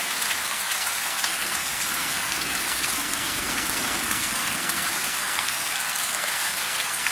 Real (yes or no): no